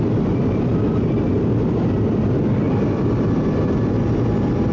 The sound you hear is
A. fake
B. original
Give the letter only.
B